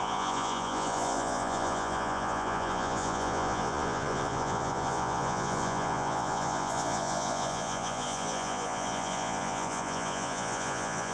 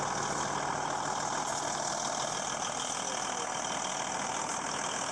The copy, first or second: first